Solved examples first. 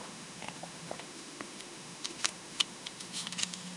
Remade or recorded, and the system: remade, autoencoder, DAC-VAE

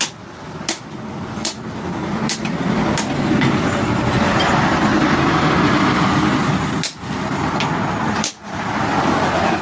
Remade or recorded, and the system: recorded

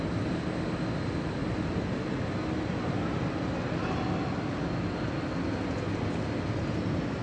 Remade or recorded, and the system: recorded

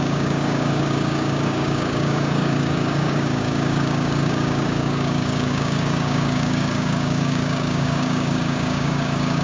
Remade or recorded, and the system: remade, codec, DAC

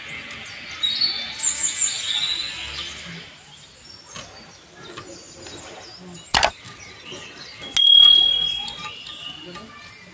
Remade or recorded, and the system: recorded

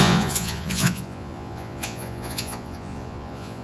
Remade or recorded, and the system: remade, vocoder, Vocos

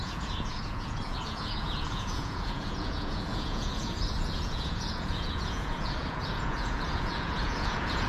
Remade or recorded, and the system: remade, vocoder, Vocos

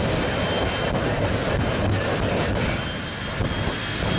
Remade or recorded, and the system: recorded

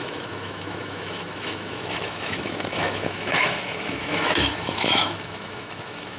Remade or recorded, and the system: remade, autoencoder, DAC-VAE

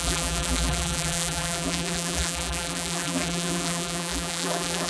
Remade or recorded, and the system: remade, vocoder, BigVGAN v2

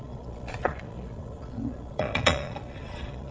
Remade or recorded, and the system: remade, vocoder, Vocos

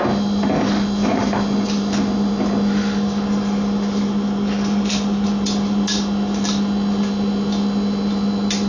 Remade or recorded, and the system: recorded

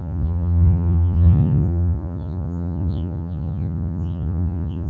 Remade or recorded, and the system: remade, vocoder, Vocos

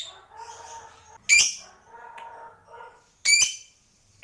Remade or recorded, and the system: recorded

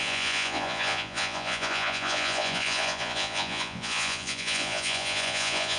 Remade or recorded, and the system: remade, vocoder, Vocos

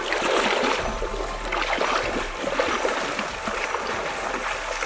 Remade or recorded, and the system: recorded